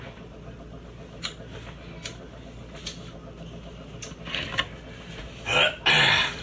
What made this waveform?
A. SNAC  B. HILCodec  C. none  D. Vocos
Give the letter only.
C